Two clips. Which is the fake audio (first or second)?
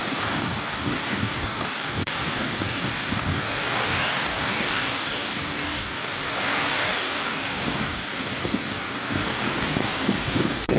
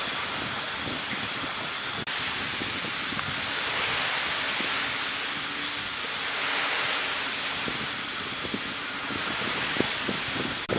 first